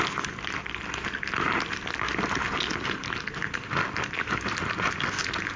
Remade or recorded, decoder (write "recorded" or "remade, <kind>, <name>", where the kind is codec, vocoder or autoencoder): recorded